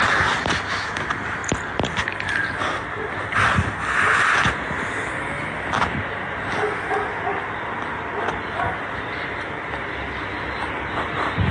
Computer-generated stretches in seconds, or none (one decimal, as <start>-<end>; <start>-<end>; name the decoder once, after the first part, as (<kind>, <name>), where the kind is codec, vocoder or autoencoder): none